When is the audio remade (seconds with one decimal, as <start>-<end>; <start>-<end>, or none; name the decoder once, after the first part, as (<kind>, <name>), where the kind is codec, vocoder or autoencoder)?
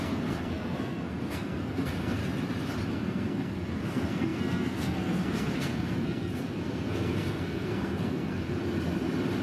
0.0-2.2 (codec, SNAC); 2.9-8.6